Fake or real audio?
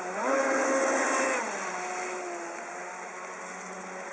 real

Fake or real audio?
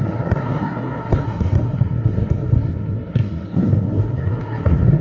fake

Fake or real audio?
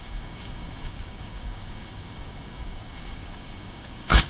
fake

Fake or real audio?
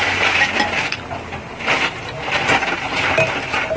real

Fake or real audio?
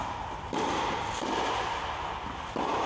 real